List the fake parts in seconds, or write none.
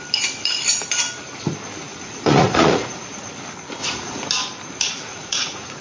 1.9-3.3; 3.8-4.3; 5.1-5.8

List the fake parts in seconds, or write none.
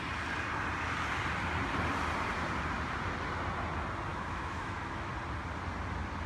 4.1-5.1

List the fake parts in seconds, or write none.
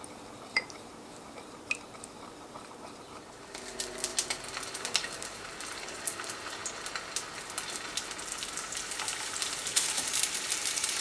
0.0-4.1; 4.8-6.6; 9.0-11.0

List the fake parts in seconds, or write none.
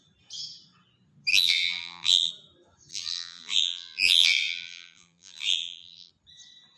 1.3-2.3; 2.9-6.1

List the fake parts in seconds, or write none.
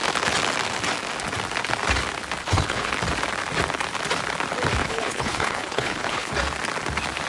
2.4-2.9; 4.8-6.3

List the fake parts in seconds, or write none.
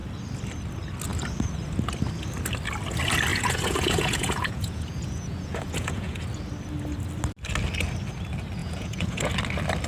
3.3-6.2; 8.6-9.3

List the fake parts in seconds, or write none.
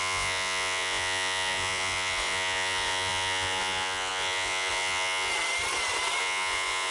0.0-5.3; 6.2-6.9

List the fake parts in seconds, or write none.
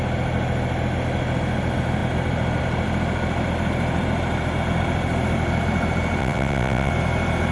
6.2-6.9